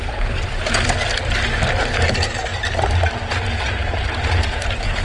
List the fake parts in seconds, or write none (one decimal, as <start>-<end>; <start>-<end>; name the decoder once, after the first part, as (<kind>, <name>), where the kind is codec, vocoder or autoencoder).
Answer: none